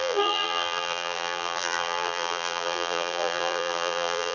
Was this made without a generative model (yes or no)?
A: no